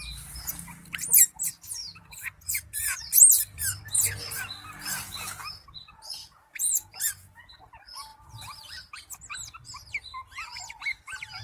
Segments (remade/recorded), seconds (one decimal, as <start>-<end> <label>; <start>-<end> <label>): 0.0-1.8 recorded; 1.8-3.0 remade; 3.0-6.2 recorded; 6.2-7.7 remade; 7.7-11.4 recorded